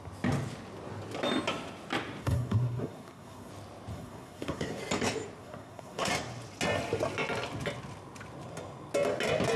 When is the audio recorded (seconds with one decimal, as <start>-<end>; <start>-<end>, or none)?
0.0-2.2; 3.5-3.9; 4.8-5.4; 6.1-9.6